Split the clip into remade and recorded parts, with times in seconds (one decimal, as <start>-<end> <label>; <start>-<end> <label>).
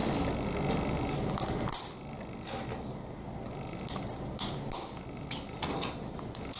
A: 0.0-6.6 recorded